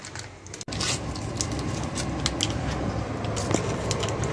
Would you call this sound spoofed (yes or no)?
no